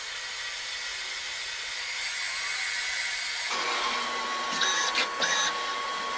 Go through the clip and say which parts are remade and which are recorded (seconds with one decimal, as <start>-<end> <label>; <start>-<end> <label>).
0.0-6.2 recorded